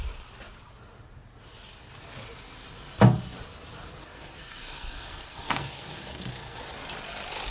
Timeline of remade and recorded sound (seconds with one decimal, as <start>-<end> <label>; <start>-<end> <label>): 0.0-4.0 recorded; 4.0-6.6 remade; 6.6-7.5 recorded